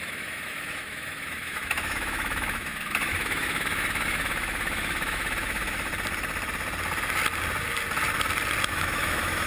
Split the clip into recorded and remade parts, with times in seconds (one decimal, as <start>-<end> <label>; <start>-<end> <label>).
0.0-5.9 remade; 5.9-8.7 recorded; 8.7-9.5 remade